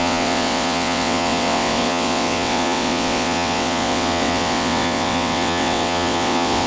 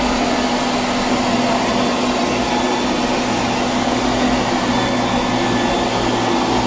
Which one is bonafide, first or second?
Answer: second